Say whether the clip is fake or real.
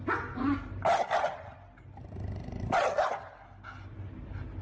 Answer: real